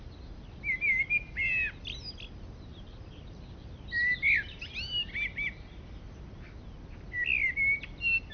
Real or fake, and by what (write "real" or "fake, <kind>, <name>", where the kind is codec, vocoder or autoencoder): real